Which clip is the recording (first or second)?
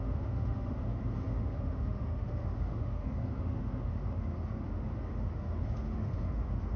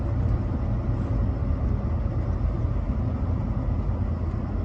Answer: second